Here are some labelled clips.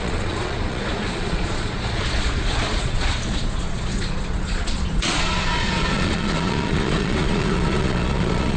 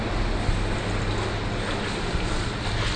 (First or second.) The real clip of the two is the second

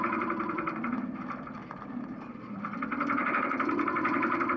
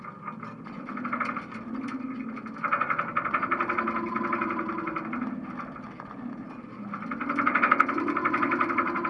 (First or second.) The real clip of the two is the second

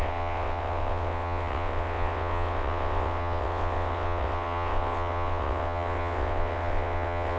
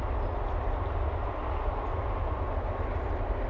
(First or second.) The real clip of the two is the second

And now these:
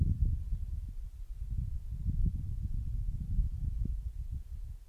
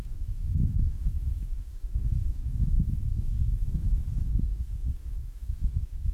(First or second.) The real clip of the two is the first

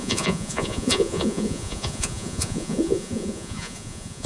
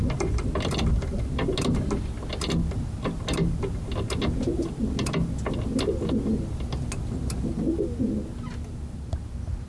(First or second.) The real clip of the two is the second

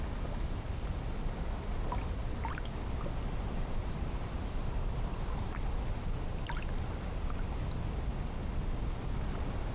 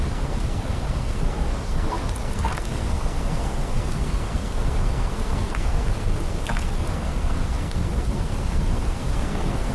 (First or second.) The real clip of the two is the first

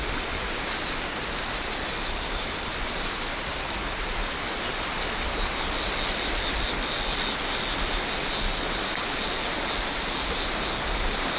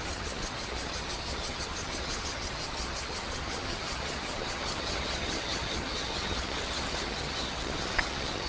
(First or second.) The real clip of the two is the first